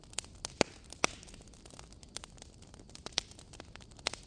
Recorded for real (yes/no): yes